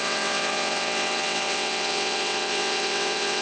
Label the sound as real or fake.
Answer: fake